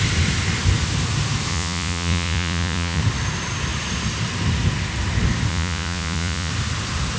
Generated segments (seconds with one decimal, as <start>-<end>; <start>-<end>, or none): 1.5-3.0; 5.5-6.5